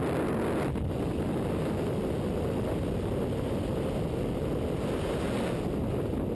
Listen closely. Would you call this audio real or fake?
real